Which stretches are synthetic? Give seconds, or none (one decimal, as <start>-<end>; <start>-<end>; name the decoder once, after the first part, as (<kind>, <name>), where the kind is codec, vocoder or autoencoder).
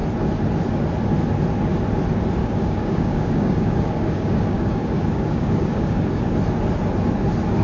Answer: 2.4-6.2 (codec, DAC)